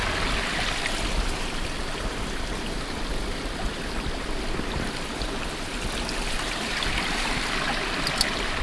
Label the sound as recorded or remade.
recorded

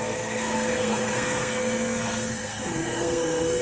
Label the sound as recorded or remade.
remade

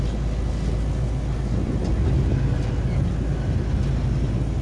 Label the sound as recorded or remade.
recorded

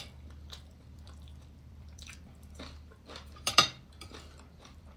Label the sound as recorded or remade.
remade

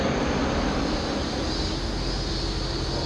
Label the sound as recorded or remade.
recorded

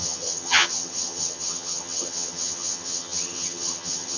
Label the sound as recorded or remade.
remade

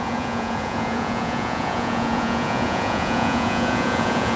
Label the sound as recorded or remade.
remade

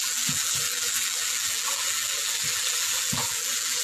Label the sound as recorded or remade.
remade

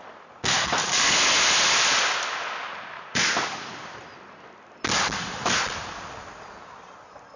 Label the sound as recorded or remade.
remade